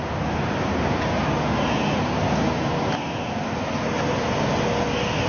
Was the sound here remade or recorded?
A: recorded